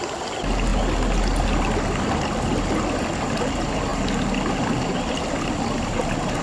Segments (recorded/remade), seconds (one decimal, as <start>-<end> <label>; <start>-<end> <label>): 0.0-6.4 recorded